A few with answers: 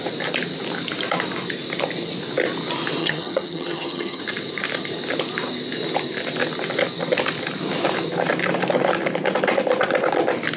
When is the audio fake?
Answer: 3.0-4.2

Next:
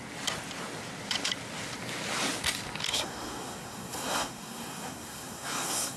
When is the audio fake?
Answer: 2.9-6.0

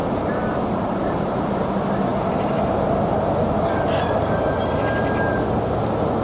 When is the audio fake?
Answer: 0.0-1.7

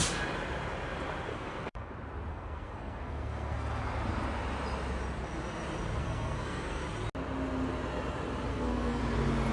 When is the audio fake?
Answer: 1.3-1.9; 2.3-3.8; 6.0-6.8; 8.5-9.0